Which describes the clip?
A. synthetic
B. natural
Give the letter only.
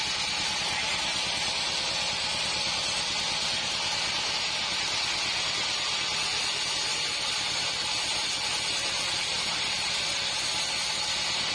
B